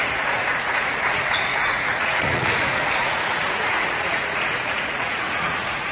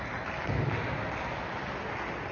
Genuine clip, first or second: second